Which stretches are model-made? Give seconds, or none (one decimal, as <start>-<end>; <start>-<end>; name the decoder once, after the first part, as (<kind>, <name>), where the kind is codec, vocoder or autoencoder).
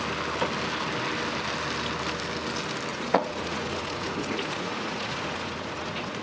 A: 2.9-6.2 (vocoder, Vocos)